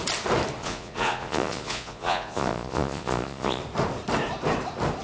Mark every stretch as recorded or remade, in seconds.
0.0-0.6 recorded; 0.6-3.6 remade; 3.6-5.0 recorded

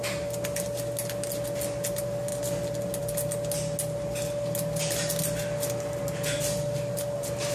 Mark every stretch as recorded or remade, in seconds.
0.0-7.5 recorded

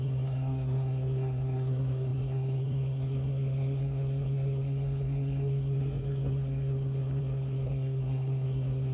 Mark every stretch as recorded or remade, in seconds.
0.0-8.9 remade

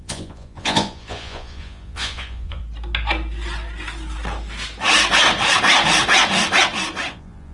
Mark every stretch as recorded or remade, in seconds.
0.0-2.6 remade; 2.6-7.1 recorded; 7.1-7.5 remade